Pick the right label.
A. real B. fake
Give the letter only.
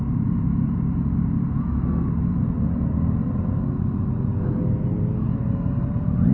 A